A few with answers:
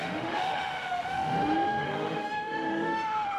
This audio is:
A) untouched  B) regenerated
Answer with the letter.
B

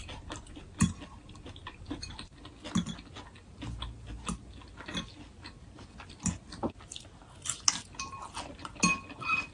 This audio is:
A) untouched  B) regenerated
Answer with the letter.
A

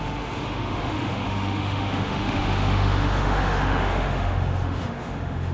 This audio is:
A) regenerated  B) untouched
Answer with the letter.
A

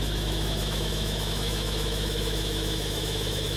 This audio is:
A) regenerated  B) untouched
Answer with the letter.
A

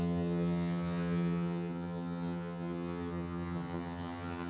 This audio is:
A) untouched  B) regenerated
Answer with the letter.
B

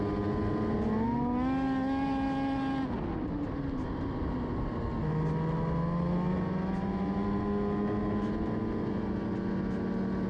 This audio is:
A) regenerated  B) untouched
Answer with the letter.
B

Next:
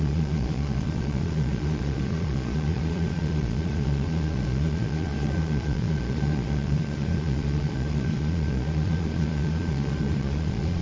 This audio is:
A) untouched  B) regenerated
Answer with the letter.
B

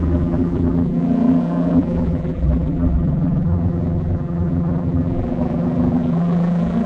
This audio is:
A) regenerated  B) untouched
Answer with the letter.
A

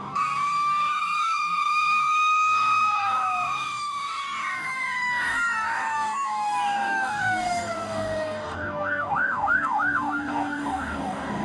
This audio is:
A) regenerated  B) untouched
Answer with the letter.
A